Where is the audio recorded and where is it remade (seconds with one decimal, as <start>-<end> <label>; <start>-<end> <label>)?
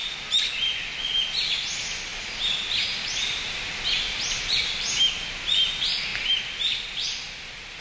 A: 0.0-2.1 recorded; 2.1-5.4 remade; 5.4-7.8 recorded